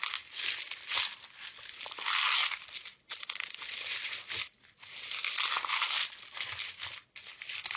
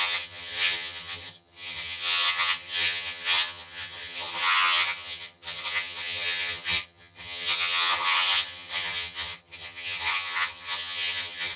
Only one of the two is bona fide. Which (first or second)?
first